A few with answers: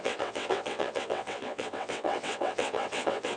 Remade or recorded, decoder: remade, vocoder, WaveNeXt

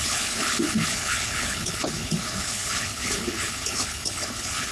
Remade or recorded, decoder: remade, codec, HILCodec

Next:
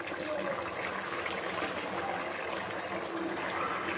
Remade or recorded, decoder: recorded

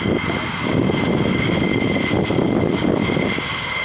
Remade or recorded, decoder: recorded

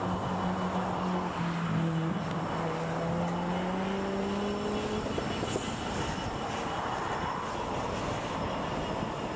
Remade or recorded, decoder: recorded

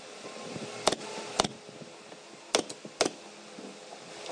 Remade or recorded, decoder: recorded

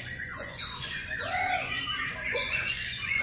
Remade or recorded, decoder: remade, vocoder, Vocos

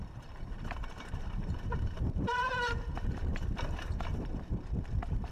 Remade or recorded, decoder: remade, vocoder, BigVGAN v2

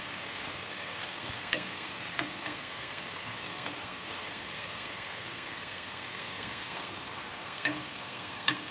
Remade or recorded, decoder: remade, codec, SNAC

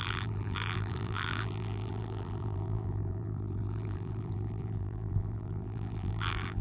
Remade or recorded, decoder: remade, vocoder, BigVGAN v2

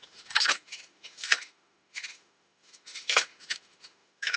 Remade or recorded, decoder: remade, autoencoder, DAC-VAE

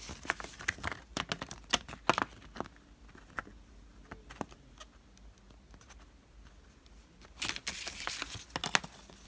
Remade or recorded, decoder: recorded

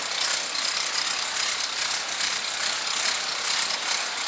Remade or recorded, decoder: remade, vocoder, BigVGAN v2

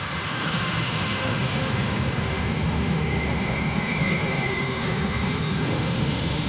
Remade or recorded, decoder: remade, autoencoder, DAC-VAE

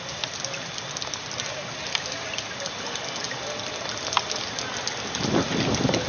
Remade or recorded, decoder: recorded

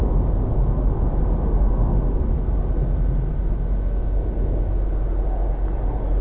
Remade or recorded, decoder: recorded